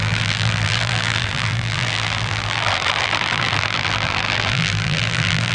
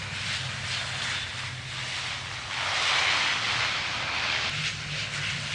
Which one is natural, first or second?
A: second